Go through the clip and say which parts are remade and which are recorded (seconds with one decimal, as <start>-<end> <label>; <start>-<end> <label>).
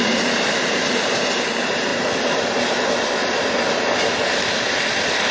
0.0-1.9 remade; 1.9-5.3 recorded